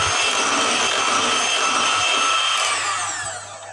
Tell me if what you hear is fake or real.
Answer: real